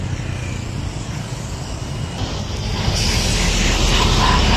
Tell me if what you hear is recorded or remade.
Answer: recorded